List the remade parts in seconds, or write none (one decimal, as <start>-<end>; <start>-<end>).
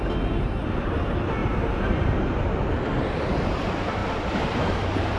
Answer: 1.4-2.5; 4.0-5.2